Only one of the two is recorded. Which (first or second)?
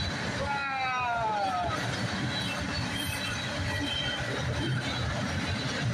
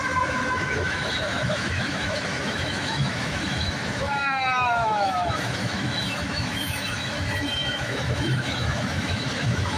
first